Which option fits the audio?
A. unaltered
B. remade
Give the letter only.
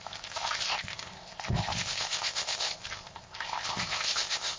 B